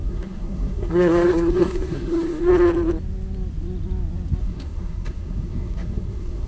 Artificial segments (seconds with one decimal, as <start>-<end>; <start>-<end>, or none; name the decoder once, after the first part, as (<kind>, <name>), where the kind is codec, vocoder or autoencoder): 0.0-2.5 (codec, SNAC); 4.4-6.5